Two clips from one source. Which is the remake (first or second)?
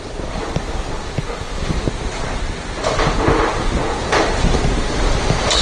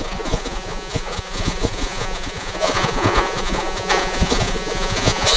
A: second